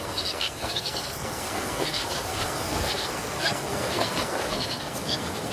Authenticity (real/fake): fake